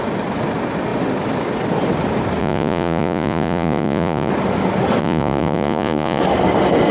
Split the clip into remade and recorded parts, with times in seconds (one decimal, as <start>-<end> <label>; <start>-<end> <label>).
0.0-2.4 recorded; 2.4-4.3 remade; 4.3-5.0 recorded; 5.0-6.2 remade; 6.2-6.9 recorded